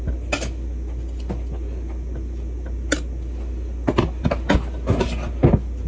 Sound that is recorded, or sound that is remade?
recorded